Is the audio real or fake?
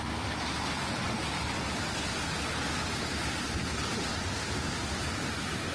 real